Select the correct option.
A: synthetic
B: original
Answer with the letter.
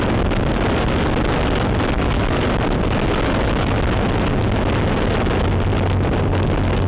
B